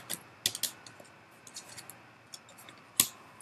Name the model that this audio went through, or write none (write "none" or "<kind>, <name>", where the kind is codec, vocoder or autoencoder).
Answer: none